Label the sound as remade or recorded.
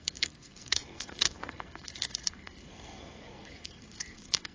remade